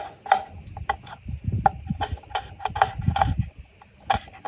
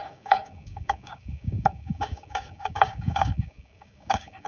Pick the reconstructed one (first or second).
second